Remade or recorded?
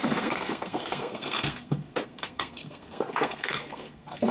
remade